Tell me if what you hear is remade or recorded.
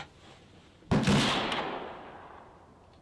recorded